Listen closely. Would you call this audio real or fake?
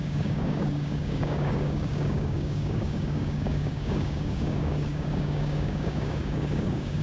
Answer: fake